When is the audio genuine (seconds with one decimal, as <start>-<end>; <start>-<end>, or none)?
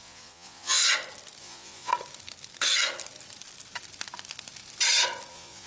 0.8-1.4; 1.9-5.3